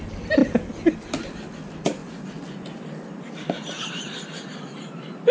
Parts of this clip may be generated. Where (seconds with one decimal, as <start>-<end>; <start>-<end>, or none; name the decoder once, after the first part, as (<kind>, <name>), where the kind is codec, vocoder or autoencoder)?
none